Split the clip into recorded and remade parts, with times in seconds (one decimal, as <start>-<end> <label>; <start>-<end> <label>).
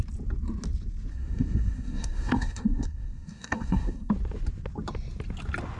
0.0-1.1 recorded; 1.1-4.1 remade; 4.1-5.8 recorded